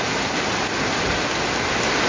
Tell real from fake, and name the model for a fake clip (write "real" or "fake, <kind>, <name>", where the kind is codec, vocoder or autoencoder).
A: real